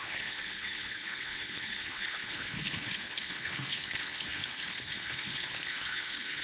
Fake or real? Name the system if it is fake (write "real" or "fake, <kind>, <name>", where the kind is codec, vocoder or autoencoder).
fake, codec, HILCodec